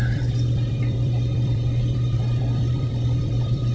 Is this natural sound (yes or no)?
no